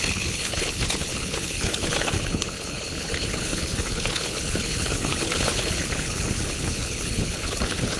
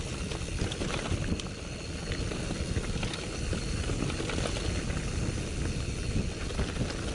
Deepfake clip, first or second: first